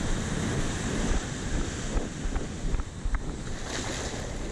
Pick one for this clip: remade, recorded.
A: recorded